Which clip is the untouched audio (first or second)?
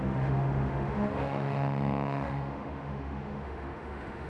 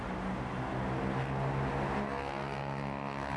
second